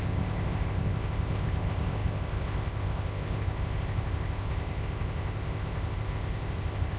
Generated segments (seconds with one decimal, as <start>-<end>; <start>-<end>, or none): 0.0-7.0